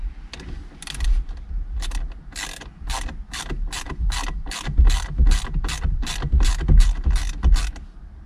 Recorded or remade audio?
recorded